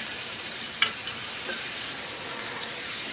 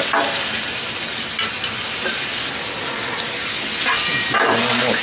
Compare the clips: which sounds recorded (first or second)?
second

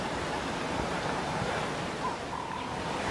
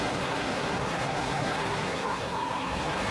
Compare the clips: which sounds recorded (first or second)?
first